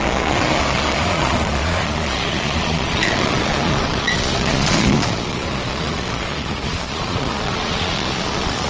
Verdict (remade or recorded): remade